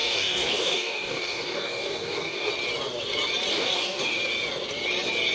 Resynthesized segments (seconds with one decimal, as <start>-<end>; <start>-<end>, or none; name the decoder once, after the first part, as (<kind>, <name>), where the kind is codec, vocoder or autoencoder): 0.0-2.5 (codec, DAC); 3.5-4.2